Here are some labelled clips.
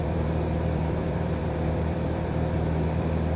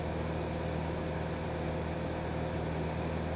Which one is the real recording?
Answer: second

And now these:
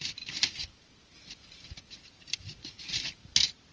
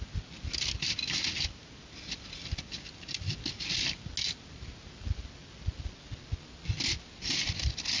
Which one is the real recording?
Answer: second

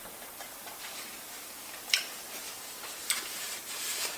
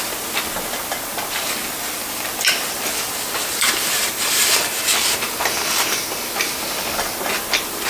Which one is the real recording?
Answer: second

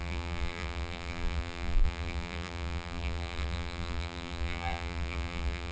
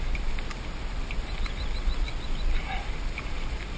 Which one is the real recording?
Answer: second